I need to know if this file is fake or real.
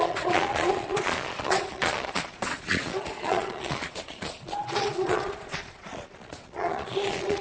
fake